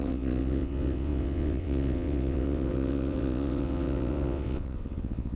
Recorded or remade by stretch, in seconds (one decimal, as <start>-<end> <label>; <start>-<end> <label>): 0.0-5.3 remade